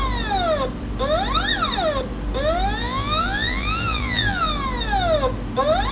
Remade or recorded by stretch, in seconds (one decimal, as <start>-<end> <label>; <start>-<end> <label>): 0.0-2.8 recorded; 2.8-4.5 remade; 4.5-5.9 recorded